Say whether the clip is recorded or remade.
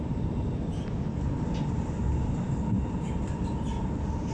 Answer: recorded